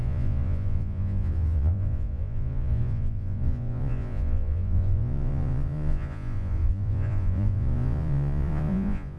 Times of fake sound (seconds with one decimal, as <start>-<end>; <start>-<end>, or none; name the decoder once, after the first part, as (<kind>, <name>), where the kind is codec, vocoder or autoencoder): 0.0-9.2 (vocoder, Vocos)